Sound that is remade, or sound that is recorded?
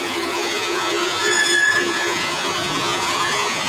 remade